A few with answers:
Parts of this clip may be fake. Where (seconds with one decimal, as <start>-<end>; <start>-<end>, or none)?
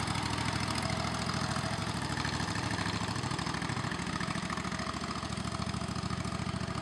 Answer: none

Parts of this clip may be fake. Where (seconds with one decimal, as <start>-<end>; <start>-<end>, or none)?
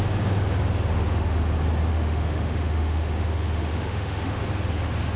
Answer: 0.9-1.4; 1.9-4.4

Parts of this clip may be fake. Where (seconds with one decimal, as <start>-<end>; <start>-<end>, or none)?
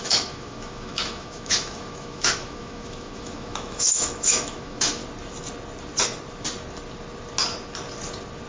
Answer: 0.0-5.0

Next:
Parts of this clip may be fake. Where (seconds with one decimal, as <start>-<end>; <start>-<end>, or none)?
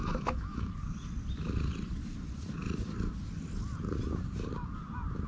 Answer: 0.0-0.7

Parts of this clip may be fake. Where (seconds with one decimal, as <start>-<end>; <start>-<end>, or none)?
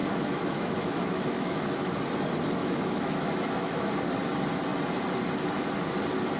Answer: 0.0-2.0; 2.6-3.9